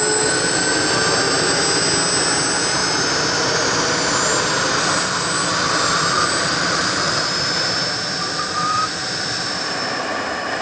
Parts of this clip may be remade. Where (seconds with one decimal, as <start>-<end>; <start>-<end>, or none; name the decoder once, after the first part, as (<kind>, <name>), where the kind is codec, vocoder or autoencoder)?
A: none